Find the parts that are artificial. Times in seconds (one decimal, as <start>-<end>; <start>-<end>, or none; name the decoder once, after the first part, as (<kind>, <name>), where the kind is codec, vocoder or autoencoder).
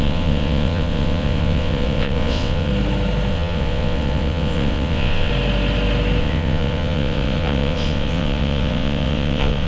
0.0-2.7 (vocoder, WaveNeXt); 3.3-5.3; 6.2-9.7